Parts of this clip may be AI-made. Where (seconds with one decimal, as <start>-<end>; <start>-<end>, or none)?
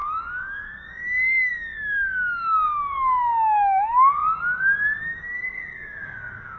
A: 0.0-4.2; 5.0-6.6